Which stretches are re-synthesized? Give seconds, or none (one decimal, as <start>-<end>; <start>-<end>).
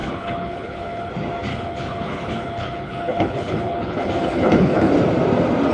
0.0-1.1; 1.5-4.9